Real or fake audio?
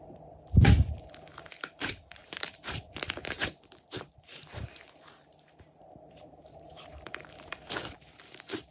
fake